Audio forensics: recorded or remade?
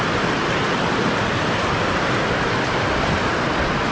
recorded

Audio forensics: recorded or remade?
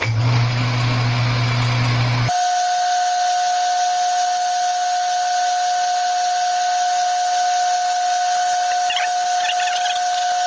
recorded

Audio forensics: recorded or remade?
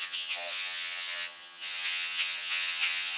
remade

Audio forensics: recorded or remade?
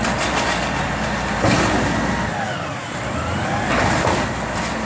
recorded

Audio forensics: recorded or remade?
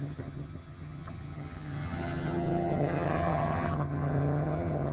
remade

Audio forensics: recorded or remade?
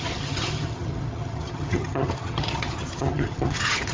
remade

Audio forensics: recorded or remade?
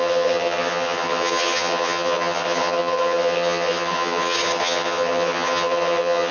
remade